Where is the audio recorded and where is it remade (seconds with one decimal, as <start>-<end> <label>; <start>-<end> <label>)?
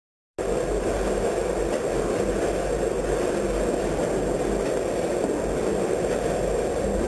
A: 0.0-7.1 recorded